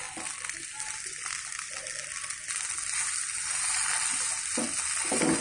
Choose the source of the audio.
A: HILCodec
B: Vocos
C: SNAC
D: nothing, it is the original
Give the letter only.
D